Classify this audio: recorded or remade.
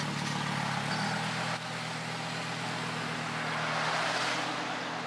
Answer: recorded